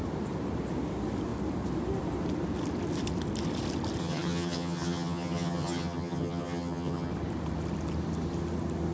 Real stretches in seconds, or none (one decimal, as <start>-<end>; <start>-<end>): 0.0-4.0; 7.1-8.9